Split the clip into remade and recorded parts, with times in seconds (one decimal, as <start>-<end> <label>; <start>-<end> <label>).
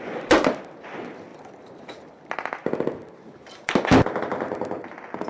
0.0-5.3 recorded